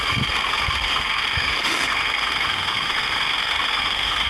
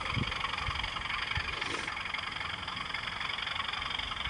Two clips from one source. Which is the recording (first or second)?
second